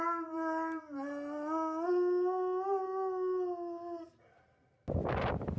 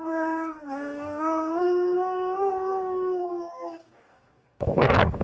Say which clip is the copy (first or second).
second